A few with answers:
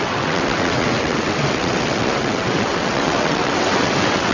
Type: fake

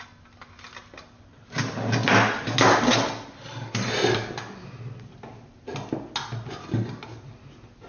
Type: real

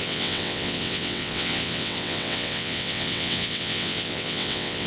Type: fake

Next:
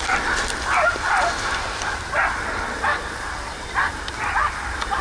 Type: real